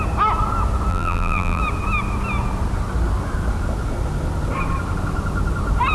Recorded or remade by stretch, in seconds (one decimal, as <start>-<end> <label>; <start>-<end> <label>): 0.0-0.9 recorded; 0.9-1.6 remade; 1.6-5.9 recorded